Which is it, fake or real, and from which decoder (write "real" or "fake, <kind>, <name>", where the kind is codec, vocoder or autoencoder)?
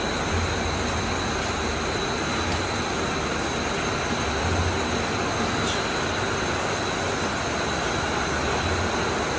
real